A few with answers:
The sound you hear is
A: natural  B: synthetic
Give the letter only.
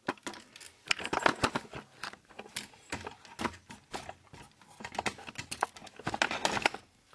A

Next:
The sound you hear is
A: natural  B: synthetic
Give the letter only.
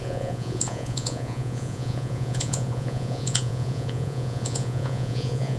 B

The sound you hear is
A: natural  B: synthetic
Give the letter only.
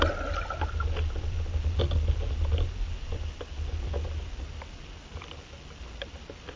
A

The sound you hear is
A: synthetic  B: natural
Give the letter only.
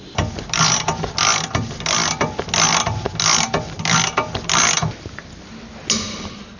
B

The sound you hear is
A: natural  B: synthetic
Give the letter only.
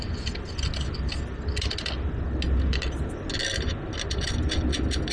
A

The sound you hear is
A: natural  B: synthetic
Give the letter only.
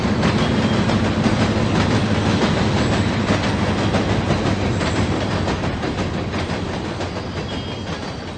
A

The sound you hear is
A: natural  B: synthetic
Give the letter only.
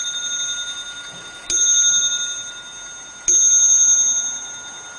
A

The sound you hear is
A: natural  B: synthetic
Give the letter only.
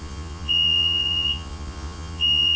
B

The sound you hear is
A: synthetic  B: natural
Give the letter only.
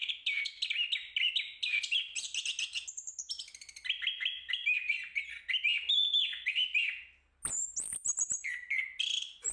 B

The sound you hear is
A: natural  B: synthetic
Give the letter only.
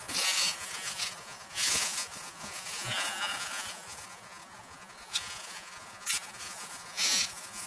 B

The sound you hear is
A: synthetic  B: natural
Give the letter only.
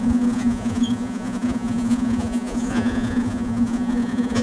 A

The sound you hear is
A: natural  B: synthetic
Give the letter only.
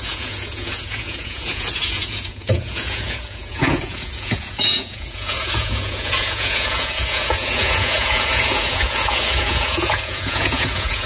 B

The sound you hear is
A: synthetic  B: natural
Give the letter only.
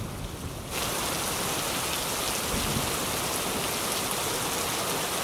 B